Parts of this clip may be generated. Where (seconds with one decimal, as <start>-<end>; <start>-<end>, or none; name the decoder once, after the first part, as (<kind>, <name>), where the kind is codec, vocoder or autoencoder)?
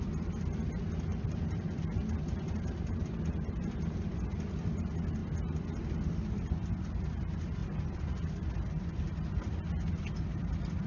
1.1-4.1 (vocoder, BigVGAN v2); 7.6-8.7